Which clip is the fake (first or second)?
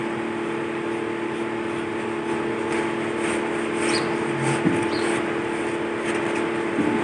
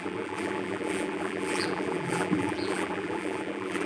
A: second